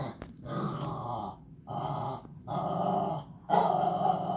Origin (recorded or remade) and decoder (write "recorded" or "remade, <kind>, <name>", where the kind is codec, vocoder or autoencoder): recorded